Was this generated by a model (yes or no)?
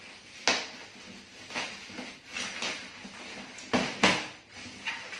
no